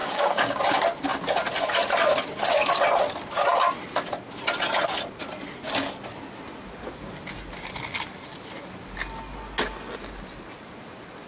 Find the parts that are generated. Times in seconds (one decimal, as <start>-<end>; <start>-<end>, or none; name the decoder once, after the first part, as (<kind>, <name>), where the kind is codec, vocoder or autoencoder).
0.0-0.6 (codec, DAC)